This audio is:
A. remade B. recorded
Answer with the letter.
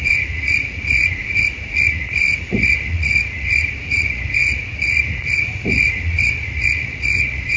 A